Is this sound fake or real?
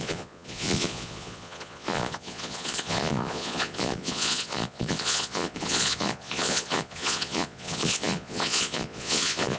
fake